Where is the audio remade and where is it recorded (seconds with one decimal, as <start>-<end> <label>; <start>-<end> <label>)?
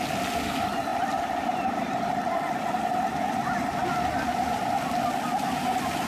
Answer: 0.0-6.1 recorded